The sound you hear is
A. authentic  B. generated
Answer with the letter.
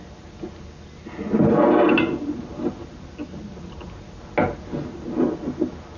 A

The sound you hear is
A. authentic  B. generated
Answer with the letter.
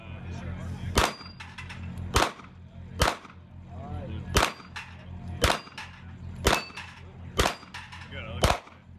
A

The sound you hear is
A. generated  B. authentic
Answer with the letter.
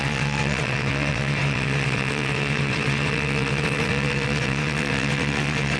A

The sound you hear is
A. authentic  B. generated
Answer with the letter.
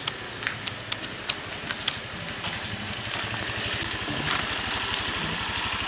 A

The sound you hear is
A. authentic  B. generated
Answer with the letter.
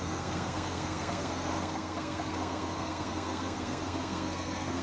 B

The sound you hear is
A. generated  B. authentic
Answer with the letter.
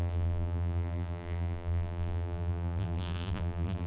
A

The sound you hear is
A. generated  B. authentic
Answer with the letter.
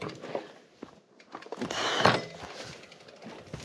B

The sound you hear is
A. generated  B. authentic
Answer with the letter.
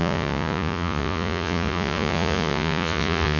A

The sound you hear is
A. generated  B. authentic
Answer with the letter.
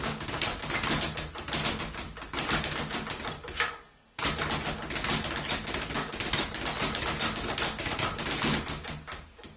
B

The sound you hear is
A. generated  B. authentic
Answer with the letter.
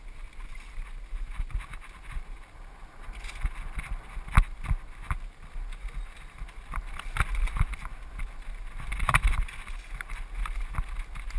B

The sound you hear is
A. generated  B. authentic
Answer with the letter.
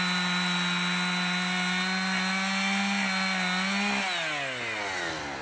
B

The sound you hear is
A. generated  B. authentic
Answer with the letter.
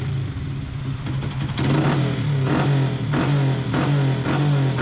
B